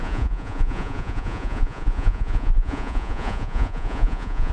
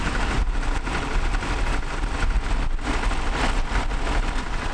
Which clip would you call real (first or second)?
second